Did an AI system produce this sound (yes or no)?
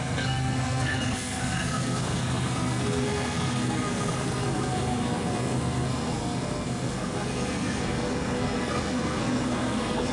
yes